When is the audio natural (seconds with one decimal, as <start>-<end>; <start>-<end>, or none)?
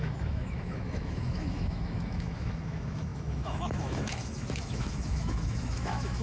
none